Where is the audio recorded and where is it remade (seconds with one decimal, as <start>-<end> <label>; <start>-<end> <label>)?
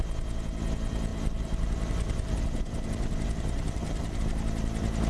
0.0-1.1 recorded; 1.1-4.2 remade; 4.2-5.1 recorded